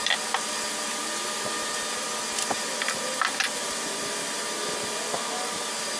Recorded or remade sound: remade